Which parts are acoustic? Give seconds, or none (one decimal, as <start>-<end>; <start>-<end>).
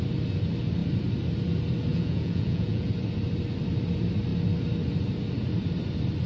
0.0-1.9; 2.9-6.3